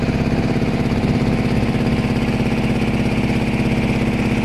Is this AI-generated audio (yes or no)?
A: no